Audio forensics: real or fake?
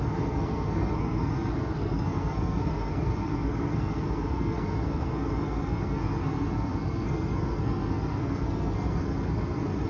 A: fake